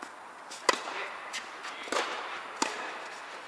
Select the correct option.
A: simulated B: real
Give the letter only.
B